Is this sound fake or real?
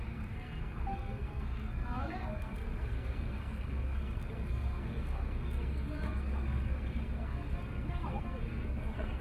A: fake